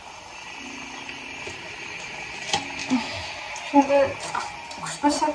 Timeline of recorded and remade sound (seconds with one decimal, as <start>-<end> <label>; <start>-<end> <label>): 0.0-2.8 recorded; 2.8-3.3 remade; 3.3-5.3 recorded